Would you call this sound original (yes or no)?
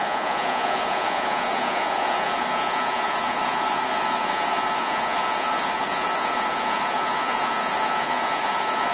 no